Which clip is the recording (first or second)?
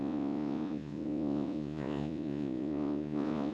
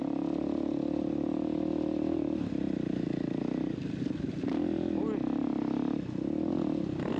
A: second